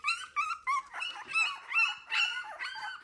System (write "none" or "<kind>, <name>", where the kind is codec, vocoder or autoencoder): vocoder, BigVGAN v2